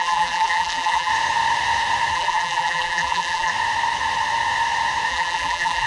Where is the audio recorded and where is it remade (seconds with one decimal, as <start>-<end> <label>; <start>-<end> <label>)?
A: 0.0-1.1 remade; 1.1-2.1 recorded; 2.1-3.5 remade; 3.5-5.1 recorded; 5.1-5.9 remade